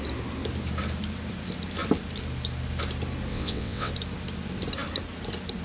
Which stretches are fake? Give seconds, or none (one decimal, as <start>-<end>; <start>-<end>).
3.3-3.9